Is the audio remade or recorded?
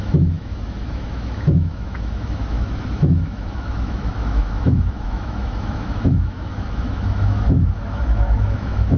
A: remade